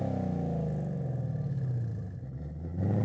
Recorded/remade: recorded